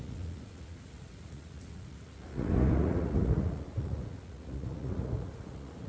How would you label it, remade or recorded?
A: remade